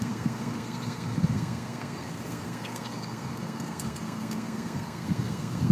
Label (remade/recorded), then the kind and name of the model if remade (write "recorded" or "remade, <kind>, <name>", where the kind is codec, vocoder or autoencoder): remade, codec, SNAC